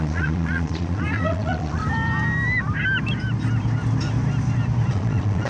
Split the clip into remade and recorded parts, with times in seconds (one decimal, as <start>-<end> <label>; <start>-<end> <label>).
0.0-1.8 remade; 1.8-4.9 recorded; 4.9-5.5 remade